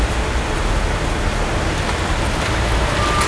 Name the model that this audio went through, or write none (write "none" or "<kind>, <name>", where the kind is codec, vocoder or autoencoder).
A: none